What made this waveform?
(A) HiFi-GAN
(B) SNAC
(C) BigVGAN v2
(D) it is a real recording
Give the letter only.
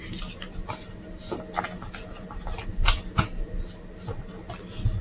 D